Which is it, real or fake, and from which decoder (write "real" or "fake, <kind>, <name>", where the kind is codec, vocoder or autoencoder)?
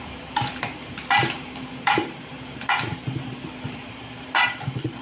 fake, vocoder, BigVGAN v2